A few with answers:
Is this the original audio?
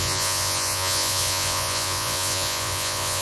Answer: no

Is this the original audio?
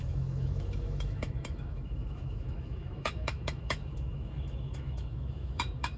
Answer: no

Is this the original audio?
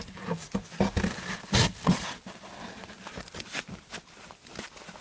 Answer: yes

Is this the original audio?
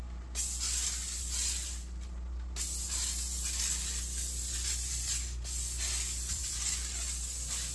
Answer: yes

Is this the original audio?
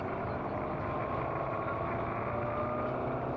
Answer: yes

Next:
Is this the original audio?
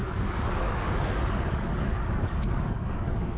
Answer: no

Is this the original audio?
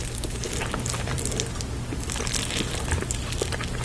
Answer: yes